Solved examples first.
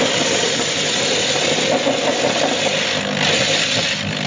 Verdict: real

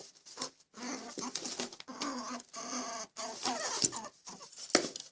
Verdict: real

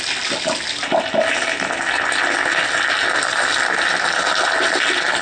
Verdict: real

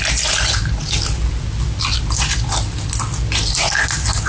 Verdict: real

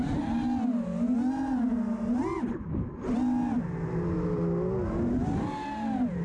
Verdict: real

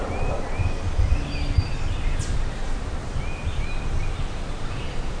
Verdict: real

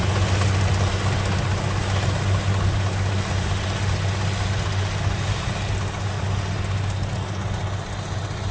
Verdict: real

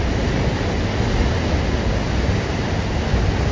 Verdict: real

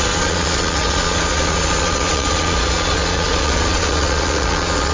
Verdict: fake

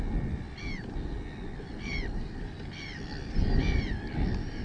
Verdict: real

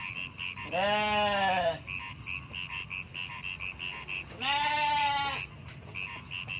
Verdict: real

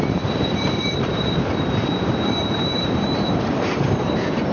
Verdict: fake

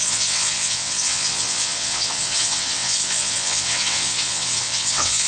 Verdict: fake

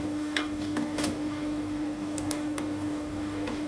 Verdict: fake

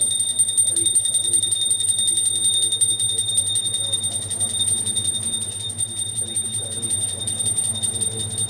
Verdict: real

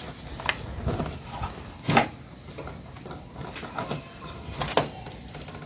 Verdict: real